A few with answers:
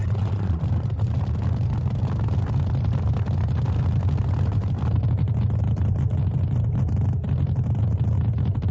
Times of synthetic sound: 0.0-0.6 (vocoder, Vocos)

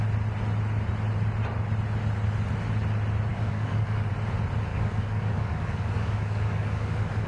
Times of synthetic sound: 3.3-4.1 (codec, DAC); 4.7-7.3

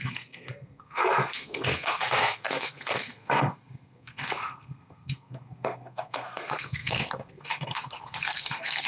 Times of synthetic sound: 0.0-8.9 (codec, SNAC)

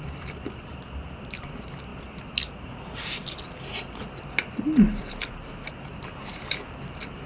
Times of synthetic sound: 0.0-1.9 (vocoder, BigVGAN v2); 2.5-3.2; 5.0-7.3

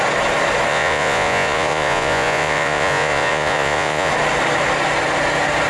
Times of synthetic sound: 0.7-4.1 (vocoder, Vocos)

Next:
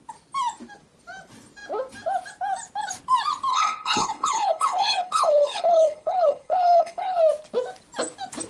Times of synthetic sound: 3.5-7.2 (codec, HILCodec)